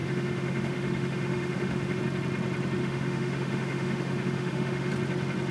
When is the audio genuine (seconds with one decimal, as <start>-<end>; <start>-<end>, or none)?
2.0-2.8; 4.9-5.5